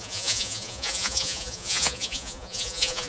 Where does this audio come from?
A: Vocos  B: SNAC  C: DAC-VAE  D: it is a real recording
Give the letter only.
A